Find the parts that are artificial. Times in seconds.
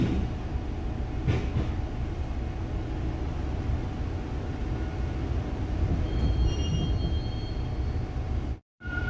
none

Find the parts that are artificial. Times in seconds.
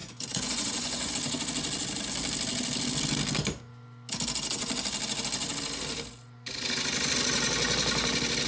0.0-1.1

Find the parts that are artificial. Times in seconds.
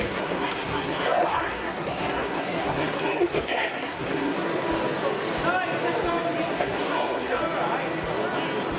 0.0-4.5; 6.5-7.4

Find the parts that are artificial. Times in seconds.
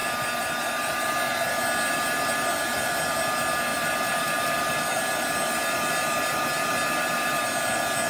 0.0-1.1; 3.7-5.9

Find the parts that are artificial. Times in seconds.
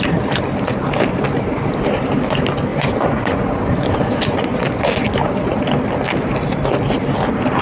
2.7-4.8